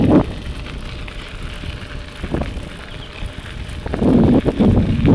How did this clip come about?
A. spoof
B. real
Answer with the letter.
B